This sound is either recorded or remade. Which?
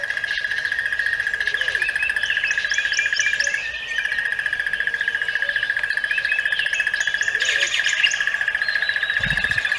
recorded